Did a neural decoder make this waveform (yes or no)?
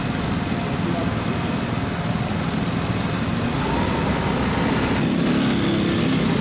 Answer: no